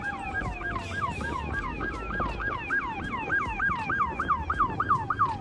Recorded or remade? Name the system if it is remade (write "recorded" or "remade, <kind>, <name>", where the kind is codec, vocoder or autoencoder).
recorded